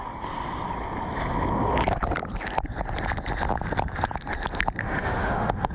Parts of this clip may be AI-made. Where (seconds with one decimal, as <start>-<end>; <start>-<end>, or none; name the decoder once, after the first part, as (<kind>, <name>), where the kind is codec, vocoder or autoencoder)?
4.8-5.7 (autoencoder, DAC-VAE)